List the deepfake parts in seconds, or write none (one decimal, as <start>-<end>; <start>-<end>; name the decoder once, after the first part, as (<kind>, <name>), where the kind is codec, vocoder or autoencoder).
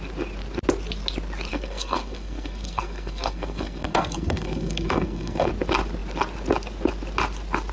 1.5-5.5 (codec, SNAC)